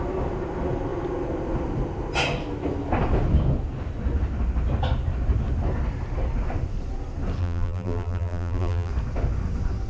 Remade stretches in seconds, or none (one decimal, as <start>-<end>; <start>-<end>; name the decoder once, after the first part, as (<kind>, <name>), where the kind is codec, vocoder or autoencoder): 7.4-8.9 (vocoder, BigVGAN v2)

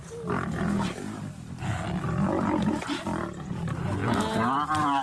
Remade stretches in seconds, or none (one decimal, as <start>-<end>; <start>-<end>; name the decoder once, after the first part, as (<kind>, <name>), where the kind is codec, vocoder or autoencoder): 3.0-4.0 (vocoder, BigVGAN v2)

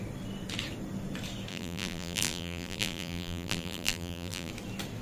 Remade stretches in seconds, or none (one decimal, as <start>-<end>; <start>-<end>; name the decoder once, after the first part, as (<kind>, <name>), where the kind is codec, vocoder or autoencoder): 1.5-4.5 (vocoder, BigVGAN v2)

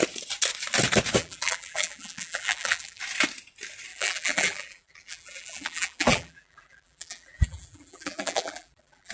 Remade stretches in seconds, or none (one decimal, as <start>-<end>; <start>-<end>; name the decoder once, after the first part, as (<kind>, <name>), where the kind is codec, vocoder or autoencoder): 1.2-3.0 (vocoder, BigVGAN v2); 3.9-9.1

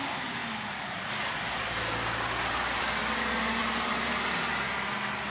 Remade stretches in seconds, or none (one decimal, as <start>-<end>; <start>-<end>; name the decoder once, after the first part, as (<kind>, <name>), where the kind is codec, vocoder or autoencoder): 3.6-4.1 (vocoder, BigVGAN v2)

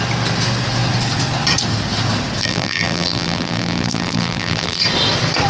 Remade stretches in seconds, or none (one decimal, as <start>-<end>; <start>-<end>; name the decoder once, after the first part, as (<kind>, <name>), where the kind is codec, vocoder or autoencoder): 2.4-4.8 (vocoder, BigVGAN v2)

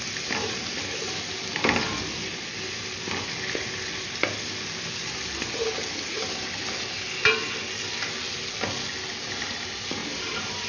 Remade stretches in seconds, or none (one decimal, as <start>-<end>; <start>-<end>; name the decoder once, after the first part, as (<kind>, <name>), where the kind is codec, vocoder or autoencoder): 10.0-10.7 (vocoder, BigVGAN v2)